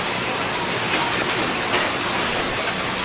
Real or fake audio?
real